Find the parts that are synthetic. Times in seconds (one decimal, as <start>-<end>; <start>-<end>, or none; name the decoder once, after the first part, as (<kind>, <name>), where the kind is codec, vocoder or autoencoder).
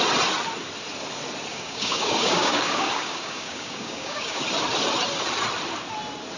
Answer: 1.5-4.4 (codec, DAC)